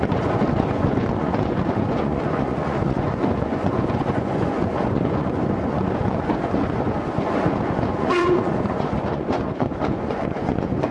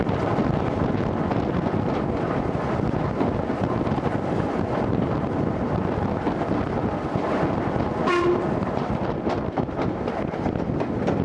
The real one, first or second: second